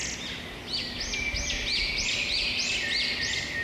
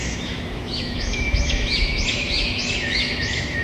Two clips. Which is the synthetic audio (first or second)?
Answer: second